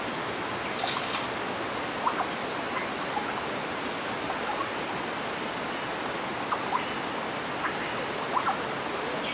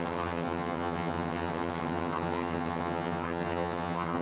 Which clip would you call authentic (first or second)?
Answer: first